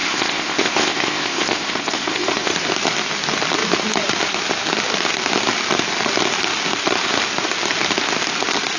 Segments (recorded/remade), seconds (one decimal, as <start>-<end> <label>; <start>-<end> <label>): 0.0-2.5 remade; 2.5-8.8 recorded